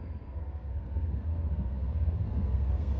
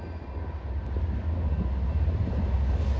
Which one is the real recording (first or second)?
second